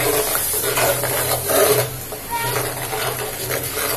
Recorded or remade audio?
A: recorded